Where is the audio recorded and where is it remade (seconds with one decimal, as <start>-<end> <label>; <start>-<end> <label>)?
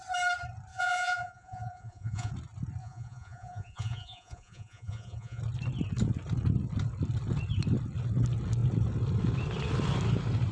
0.0-0.7 recorded; 0.7-2.3 remade; 2.3-2.8 recorded; 2.8-5.4 remade; 5.4-10.5 recorded